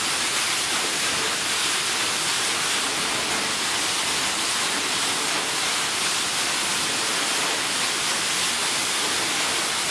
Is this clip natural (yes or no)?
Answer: no